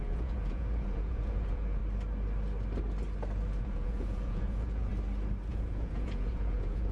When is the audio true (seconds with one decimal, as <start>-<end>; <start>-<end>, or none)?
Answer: 1.8-3.6; 4.9-5.5